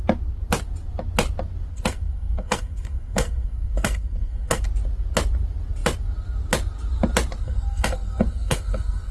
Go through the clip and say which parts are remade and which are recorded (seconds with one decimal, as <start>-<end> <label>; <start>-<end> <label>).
0.0-1.7 recorded; 1.7-4.6 remade; 4.6-7.4 recorded; 7.4-9.1 remade